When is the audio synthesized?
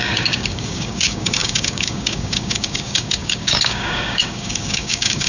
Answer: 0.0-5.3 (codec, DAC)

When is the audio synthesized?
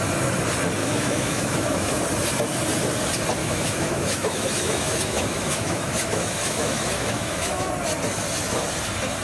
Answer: 0.8-2.0 (autoencoder, DAC-VAE); 3.4-7.7